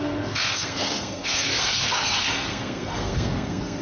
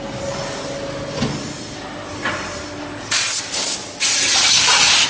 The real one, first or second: second